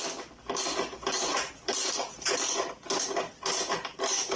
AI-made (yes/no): no